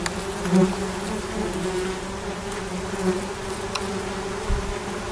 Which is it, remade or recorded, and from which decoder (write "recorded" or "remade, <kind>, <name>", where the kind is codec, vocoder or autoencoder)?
recorded